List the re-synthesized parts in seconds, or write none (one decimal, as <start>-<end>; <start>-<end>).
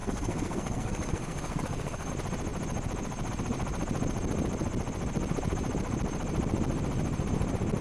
0.0-2.1